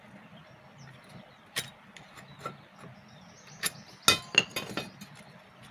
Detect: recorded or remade recorded